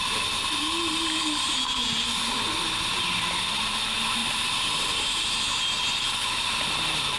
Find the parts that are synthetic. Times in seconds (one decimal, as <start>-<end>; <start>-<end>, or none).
4.2-5.4